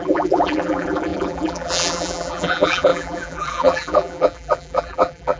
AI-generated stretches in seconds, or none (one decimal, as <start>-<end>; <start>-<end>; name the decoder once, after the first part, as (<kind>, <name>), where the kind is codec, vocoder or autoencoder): 0.0-5.4 (vocoder, BigVGAN v2)